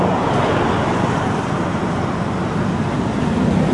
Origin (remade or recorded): recorded